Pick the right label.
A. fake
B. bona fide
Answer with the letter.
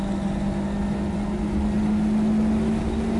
B